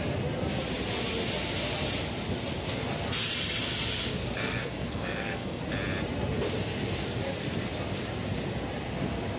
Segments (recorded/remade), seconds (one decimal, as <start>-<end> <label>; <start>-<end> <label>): 0.0-4.4 recorded; 4.4-5.6 remade; 5.6-9.4 recorded